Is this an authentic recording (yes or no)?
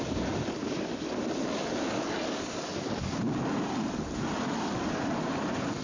yes